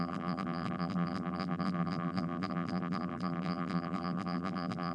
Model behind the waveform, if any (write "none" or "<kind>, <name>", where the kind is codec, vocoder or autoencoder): vocoder, BigVGAN v2